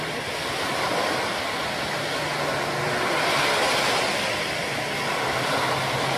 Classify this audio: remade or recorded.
recorded